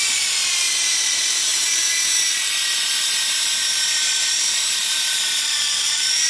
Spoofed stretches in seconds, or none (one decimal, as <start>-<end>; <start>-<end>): 0.0-6.3